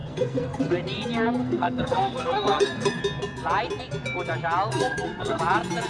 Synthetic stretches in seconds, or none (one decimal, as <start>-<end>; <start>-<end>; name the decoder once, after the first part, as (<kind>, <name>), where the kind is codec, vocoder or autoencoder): 0.0-0.6 (codec, SNAC); 1.4-3.0; 4.7-5.4